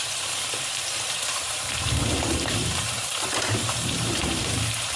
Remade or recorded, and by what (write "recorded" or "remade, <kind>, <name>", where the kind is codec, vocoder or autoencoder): remade, vocoder, BigVGAN v2